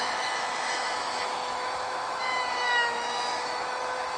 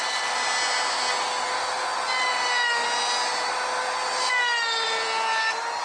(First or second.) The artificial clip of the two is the first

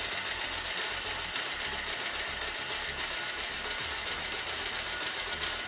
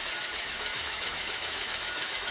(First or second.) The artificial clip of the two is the second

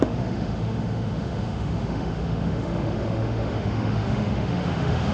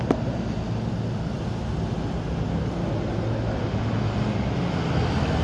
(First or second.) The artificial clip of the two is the first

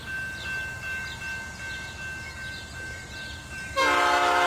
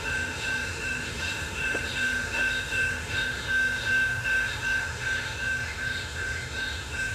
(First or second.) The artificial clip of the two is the second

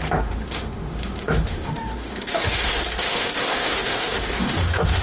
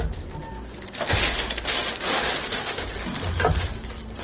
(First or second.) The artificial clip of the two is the first